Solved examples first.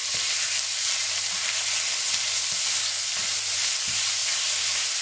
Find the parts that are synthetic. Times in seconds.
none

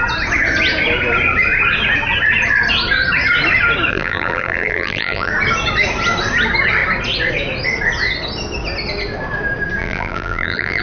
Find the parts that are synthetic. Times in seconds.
3.9-5.3 (vocoder, BigVGAN v2); 9.8-10.8